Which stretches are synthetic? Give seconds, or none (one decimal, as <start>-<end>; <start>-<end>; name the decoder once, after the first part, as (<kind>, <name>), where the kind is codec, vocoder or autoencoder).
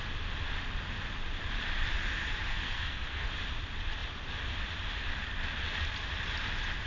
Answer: 2.5-3.3 (codec, SNAC)